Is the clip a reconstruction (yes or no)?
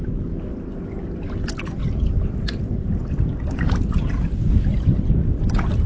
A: no